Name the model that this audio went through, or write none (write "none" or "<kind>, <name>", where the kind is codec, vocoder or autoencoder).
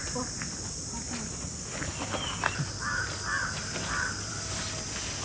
none